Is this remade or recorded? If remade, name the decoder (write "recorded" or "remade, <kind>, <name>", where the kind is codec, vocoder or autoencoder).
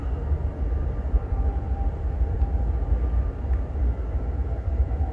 remade, vocoder, BigVGAN v2